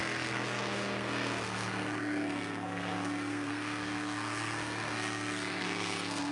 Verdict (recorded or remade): remade